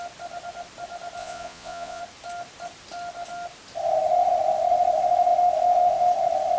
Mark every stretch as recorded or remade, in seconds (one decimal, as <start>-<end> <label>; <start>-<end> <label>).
0.0-1.2 recorded; 1.2-2.0 remade; 2.0-6.6 recorded